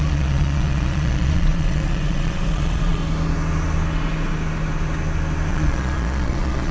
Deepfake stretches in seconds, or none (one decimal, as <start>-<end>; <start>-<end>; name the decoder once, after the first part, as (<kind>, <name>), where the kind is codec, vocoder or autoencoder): 0.0-3.0 (vocoder, Vocos); 5.5-6.7